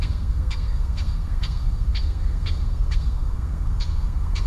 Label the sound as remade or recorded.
remade